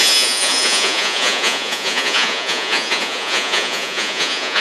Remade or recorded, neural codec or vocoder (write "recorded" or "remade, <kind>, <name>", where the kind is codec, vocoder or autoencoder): remade, vocoder, Vocos